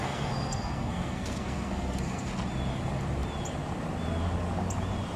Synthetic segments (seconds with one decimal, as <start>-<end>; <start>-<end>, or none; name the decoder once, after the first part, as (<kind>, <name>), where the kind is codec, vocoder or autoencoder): 0.0-2.3 (codec, SNAC)